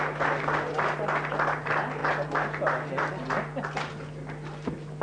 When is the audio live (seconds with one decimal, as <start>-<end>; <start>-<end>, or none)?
0.0-5.0